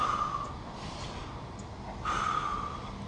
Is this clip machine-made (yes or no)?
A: no